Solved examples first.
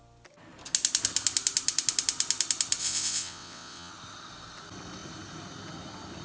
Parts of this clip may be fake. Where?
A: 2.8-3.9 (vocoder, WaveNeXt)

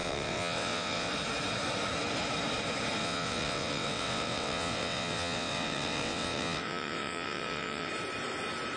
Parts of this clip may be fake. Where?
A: 0.0-1.1 (vocoder, WaveNeXt); 3.0-7.9

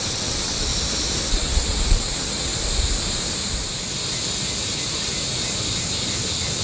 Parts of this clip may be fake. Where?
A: 0.0-0.7 (vocoder, WaveNeXt); 1.3-2.5